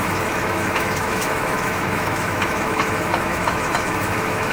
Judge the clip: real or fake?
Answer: fake